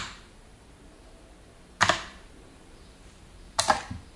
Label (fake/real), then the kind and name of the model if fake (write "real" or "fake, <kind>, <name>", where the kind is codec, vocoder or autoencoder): fake, vocoder, BigVGAN v2